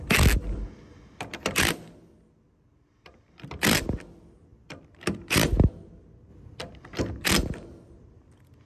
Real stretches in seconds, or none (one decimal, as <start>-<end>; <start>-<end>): 0.0-4.5; 5.7-6.3; 7.0-8.7